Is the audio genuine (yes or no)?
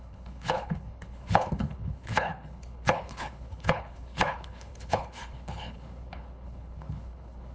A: no